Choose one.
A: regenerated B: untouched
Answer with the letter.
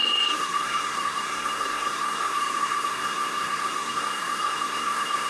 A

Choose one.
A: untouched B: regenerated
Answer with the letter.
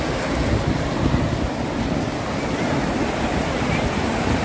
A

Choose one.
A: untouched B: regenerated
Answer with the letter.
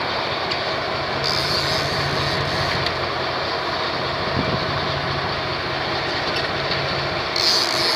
A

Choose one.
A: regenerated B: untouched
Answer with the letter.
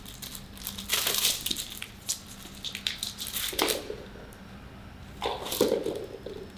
B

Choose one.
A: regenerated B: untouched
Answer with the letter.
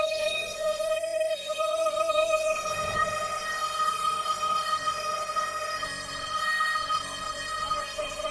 A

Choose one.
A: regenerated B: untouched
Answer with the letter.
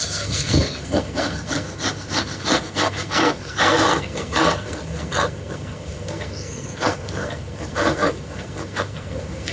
A